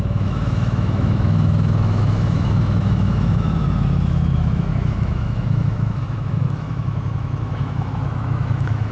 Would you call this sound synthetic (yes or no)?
yes